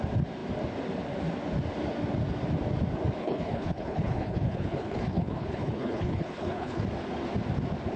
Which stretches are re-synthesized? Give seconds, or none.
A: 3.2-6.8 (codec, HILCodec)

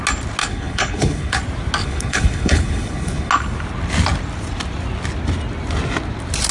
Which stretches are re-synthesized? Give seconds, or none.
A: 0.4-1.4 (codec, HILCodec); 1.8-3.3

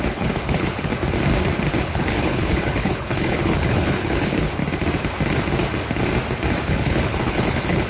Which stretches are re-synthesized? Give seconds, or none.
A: 0.0-0.9 (codec, HILCodec); 1.8-4.6; 6.6-7.9

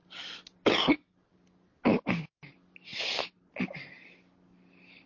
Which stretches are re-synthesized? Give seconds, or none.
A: none

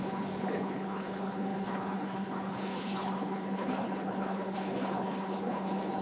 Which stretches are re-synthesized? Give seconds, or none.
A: 0.0-6.0 (codec, HILCodec)